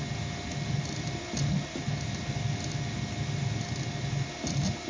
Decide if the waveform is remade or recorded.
recorded